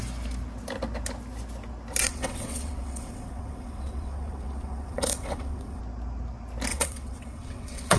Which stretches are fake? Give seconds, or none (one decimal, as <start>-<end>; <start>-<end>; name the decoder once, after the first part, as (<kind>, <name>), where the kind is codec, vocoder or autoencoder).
2.0-5.8 (vocoder, WaveNeXt); 6.7-8.0